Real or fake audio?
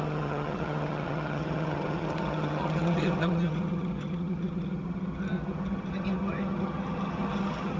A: fake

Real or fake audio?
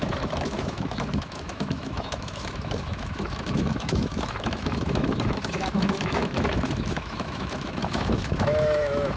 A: fake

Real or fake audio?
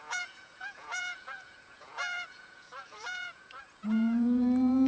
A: fake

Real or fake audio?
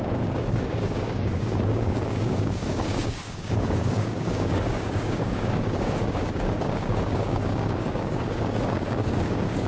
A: fake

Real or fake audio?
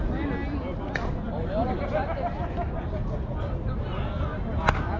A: real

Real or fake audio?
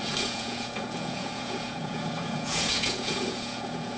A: fake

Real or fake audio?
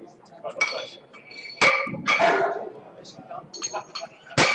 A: real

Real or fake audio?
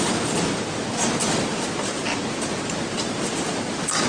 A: real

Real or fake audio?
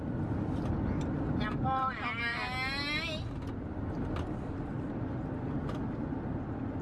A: real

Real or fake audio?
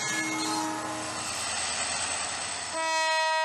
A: real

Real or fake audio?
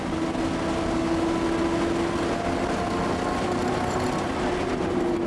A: real